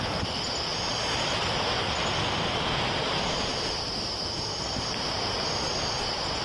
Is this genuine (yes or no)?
yes